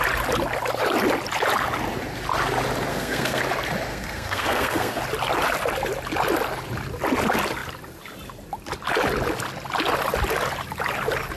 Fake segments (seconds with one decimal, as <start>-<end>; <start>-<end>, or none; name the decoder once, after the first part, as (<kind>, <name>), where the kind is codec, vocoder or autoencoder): 2.9-3.4 (codec, SNAC); 3.9-5.0